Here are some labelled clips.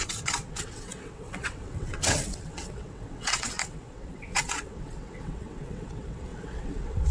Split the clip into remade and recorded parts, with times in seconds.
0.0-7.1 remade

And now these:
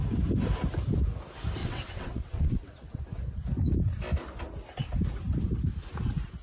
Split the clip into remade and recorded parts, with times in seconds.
0.0-1.6 recorded; 1.6-3.0 remade; 3.0-6.4 recorded

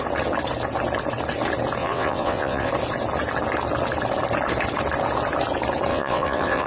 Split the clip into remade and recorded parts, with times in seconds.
0.0-1.8 recorded; 1.8-2.7 remade; 2.7-5.9 recorded; 5.9-6.7 remade

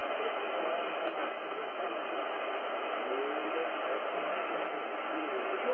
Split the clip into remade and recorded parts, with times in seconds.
0.0-5.7 recorded

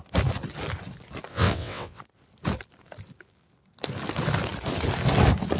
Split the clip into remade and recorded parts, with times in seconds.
0.0-1.3 recorded; 1.3-2.0 remade; 2.0-5.6 recorded